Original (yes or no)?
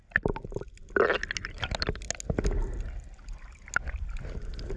yes